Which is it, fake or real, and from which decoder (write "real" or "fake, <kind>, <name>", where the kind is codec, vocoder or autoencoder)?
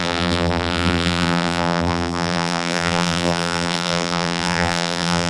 fake, vocoder, BigVGAN v2